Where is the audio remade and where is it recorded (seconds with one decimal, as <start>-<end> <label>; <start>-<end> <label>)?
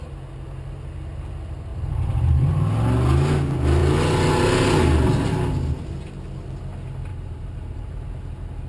0.0-1.7 recorded; 1.7-2.5 remade; 2.5-7.1 recorded; 7.1-7.9 remade; 7.9-8.7 recorded